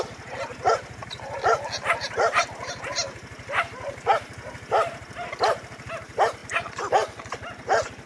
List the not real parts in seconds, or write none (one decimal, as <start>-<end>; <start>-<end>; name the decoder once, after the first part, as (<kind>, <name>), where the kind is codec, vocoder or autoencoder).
none